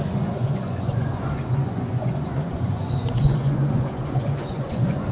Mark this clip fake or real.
fake